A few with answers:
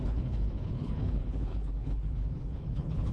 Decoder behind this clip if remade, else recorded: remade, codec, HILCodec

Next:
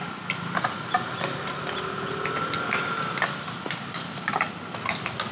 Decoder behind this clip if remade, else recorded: recorded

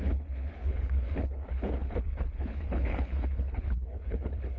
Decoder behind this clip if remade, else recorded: remade, codec, HILCodec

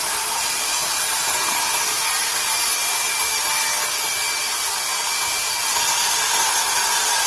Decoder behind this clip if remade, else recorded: recorded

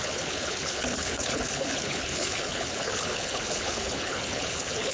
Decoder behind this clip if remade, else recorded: remade, codec, HILCodec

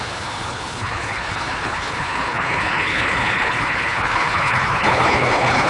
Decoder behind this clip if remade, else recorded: remade, codec, HILCodec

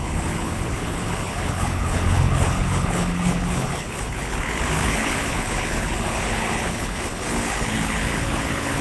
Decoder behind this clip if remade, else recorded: remade, codec, HILCodec